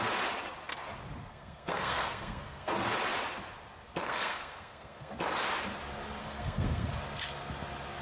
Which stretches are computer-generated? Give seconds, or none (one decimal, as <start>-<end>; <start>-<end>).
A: 1.3-2.7; 4.0-5.1; 6.2-6.9